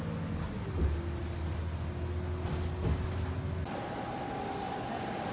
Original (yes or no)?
yes